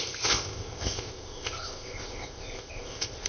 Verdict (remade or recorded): remade